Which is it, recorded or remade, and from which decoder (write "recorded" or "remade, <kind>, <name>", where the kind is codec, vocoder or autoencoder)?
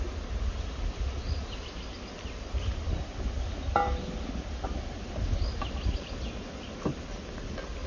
recorded